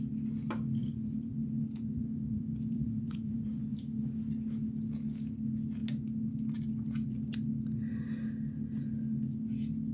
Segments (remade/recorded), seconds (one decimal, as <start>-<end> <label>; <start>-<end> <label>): 0.0-0.8 recorded; 0.8-4.0 remade; 4.0-9.9 recorded